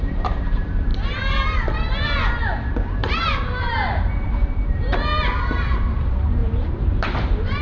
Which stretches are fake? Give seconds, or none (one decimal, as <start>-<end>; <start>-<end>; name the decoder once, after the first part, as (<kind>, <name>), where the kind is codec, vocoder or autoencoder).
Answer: 0.0-0.9 (vocoder, BigVGAN v2); 2.7-7.6